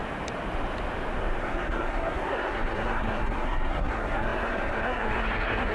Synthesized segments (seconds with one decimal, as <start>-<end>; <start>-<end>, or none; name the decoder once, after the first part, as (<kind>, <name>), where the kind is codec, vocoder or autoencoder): 1.4-5.7 (codec, SNAC)